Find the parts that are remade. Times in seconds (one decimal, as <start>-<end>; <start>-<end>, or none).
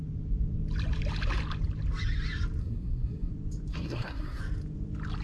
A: 2.6-3.3; 3.7-4.4